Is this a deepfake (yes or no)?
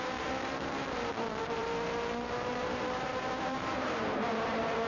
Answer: yes